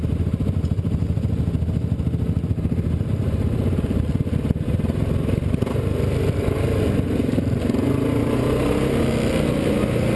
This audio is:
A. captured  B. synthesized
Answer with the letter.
A